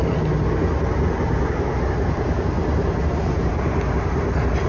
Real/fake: real